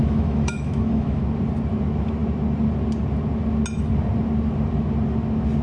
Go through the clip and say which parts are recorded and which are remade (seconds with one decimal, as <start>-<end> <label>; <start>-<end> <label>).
0.0-1.2 remade; 1.2-5.6 recorded